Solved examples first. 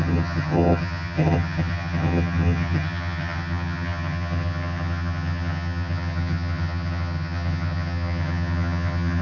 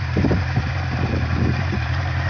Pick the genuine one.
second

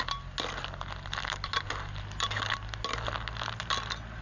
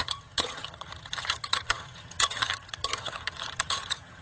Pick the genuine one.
first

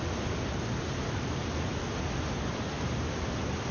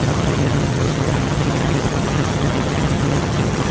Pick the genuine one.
first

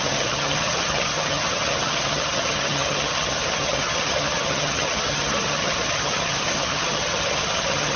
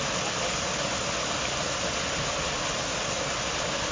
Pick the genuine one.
second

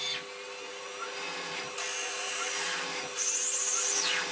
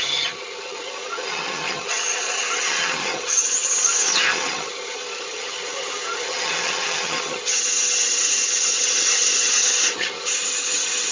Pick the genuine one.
first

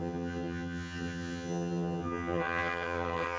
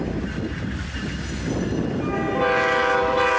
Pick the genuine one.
second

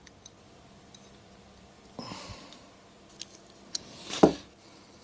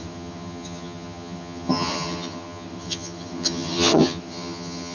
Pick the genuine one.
first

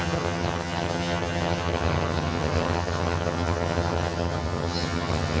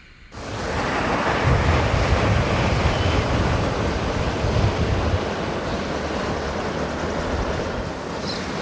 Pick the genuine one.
second